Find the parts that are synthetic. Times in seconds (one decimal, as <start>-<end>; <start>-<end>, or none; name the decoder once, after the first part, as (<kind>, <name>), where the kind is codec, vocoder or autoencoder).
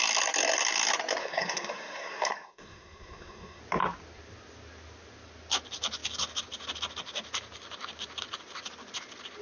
1.2-3.6 (codec, SNAC)